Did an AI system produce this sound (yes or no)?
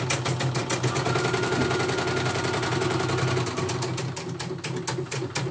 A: no